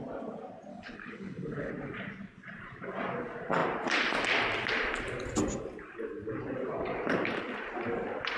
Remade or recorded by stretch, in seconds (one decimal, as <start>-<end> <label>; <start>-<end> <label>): 0.0-0.7 recorded; 0.7-1.7 remade; 1.7-8.4 recorded